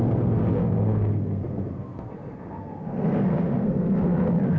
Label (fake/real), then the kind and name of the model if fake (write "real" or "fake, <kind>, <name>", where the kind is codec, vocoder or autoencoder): fake, codec, SNAC